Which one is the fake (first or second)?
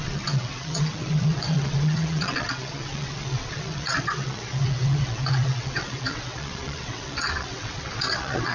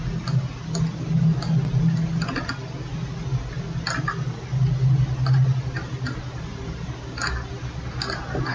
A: first